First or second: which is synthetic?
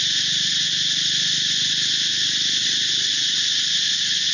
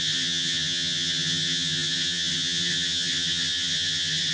second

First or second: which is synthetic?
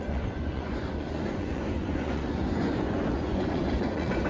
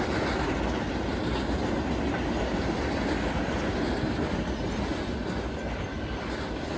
first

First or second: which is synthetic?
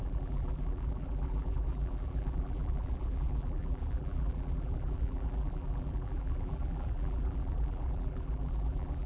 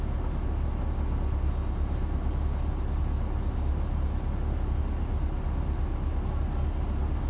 first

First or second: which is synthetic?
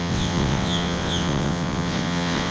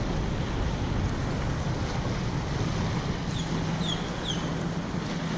first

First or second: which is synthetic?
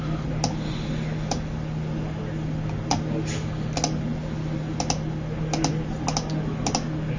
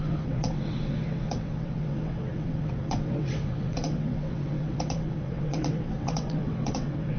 second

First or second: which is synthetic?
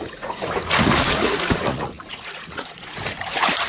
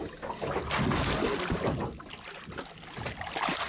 first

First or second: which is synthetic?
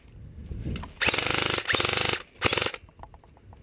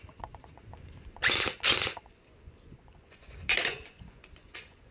second